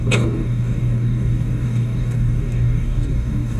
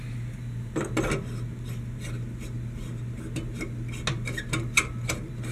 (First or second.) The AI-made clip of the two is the first